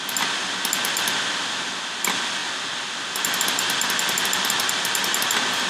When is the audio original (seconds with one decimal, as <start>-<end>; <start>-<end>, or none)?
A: 0.0-5.7